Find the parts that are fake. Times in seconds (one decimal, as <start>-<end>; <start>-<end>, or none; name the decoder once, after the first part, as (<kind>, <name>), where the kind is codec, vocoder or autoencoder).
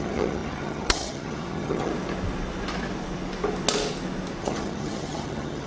0.0-1.9 (vocoder, HiFi-GAN); 4.4-5.7